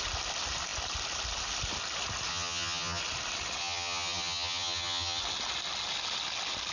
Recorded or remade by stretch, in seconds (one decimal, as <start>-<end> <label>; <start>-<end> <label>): 0.0-2.3 recorded; 2.3-3.0 remade; 3.0-3.6 recorded; 3.6-5.2 remade; 5.2-6.7 recorded